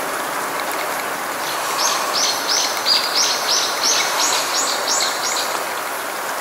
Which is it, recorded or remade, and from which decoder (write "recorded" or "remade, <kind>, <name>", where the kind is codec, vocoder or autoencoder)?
recorded